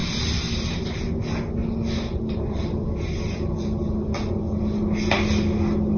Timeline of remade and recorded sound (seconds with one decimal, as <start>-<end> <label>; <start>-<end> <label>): 0.0-1.0 remade; 1.0-6.0 recorded